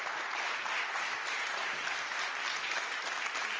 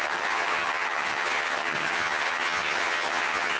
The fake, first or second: second